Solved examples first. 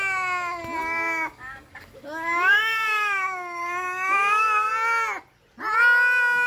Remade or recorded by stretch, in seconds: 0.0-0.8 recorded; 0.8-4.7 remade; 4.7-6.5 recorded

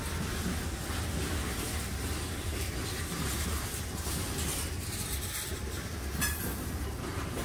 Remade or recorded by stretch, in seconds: 0.0-5.5 remade; 5.5-6.6 recorded; 6.6-7.4 remade

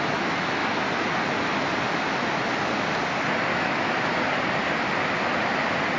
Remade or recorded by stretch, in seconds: 0.0-3.5 recorded; 3.5-4.1 remade; 4.1-6.0 recorded

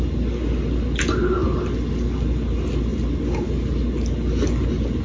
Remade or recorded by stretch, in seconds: 0.0-5.0 recorded